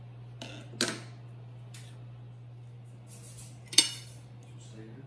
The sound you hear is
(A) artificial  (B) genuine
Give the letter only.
B